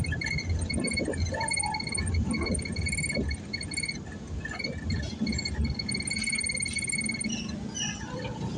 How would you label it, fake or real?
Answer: real